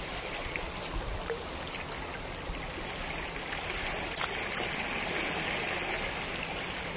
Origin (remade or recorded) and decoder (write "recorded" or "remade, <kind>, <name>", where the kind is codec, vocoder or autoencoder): recorded